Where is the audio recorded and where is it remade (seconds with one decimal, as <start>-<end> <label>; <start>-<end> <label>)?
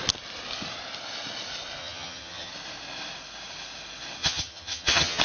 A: 0.0-1.8 recorded; 1.8-2.5 remade; 2.5-4.2 recorded; 4.2-5.2 remade